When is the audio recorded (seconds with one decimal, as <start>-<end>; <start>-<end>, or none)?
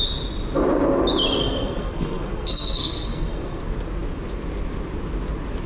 0.0-1.4; 3.6-5.7